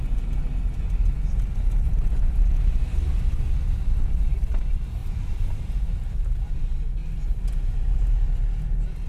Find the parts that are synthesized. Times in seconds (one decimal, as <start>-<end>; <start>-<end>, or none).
5.0-6.5; 7.0-8.4